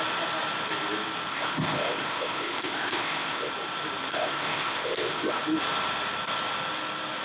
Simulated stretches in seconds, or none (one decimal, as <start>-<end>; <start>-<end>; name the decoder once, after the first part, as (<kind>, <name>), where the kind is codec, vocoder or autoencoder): 1.3-3.5 (codec, ZipCodec); 4.1-5.4